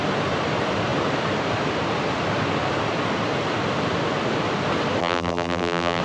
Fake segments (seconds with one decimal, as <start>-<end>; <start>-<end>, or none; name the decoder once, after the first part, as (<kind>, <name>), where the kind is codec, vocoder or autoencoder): 5.0-6.0 (vocoder, BigVGAN v2)